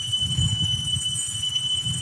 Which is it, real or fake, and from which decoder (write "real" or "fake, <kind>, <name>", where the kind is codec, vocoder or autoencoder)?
fake, autoencoder, DAC-VAE